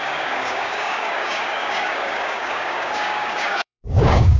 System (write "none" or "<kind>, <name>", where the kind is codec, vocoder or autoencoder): codec, DAC